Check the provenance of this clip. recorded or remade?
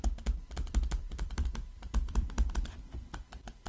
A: remade